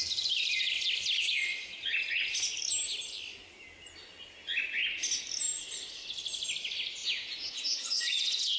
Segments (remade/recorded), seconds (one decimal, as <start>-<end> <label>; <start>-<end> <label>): 0.0-7.0 recorded; 7.0-8.6 remade